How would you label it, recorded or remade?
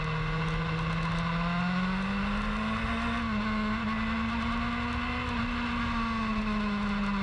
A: recorded